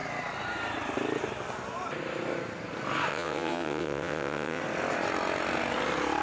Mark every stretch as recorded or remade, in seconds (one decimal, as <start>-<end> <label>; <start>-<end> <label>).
0.0-3.1 recorded; 3.1-4.6 remade; 4.6-6.2 recorded